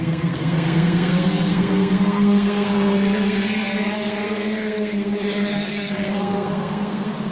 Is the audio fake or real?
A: fake